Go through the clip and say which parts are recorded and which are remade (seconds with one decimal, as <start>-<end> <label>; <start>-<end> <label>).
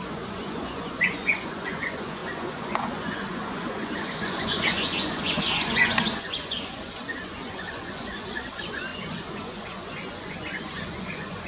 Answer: 0.0-11.5 remade